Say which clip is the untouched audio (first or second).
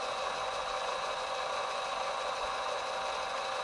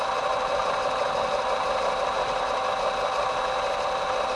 second